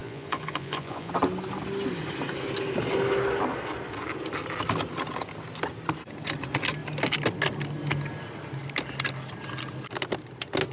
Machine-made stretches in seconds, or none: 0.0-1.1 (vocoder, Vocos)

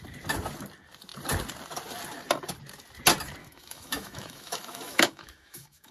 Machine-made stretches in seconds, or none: 3.4-5.9 (autoencoder, DAC-VAE)

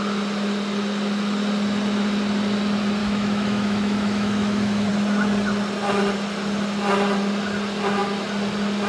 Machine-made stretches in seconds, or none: 3.0-4.9 (autoencoder, DAC-VAE)

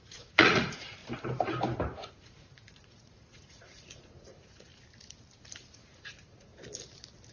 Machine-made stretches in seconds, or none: 0.0-1.0 (vocoder, Vocos); 2.1-4.7; 5.7-6.5

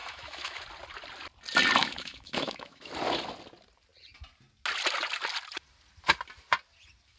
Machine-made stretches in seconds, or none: 0.0-0.6 (autoencoder, DAC-VAE); 1.8-2.9

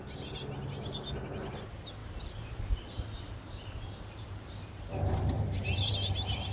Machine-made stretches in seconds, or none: 2.0-5.9 (vocoder, BigVGAN v2)